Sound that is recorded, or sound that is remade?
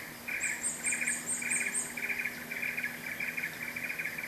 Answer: recorded